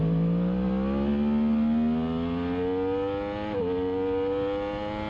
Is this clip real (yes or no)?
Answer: yes